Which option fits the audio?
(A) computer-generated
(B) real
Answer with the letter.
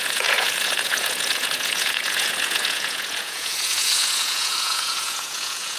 A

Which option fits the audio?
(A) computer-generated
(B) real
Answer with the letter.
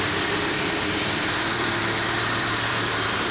A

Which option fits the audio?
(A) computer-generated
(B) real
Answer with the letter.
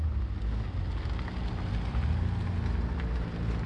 B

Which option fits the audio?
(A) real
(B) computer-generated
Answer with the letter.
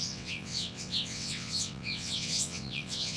B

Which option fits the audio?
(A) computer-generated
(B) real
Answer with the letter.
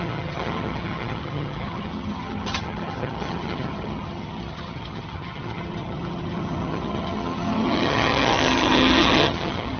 A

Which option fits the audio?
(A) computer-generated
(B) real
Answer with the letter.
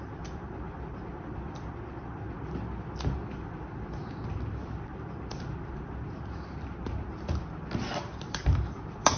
A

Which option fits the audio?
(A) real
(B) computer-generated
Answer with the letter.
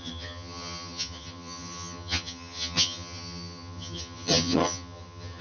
B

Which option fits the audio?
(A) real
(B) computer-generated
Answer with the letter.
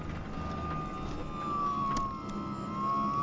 A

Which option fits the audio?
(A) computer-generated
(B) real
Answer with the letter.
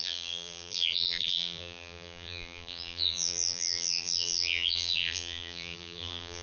A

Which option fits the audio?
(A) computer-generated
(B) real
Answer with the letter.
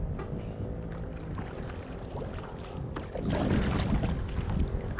B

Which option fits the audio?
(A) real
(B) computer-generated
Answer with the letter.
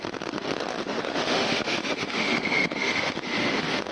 B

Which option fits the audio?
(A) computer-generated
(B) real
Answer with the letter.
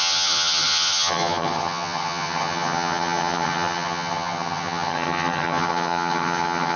A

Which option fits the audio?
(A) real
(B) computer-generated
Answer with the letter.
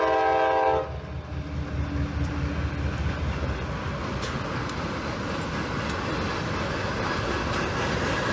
A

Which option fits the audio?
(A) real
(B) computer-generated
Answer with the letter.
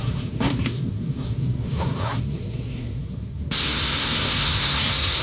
B